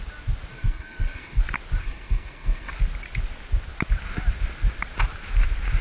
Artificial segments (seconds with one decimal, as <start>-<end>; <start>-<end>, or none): 0.5-1.4; 1.8-2.7